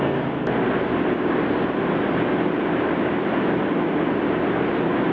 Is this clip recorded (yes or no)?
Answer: yes